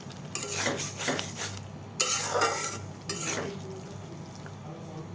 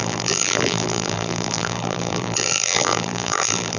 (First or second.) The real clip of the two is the first